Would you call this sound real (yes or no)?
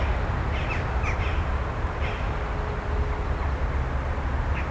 yes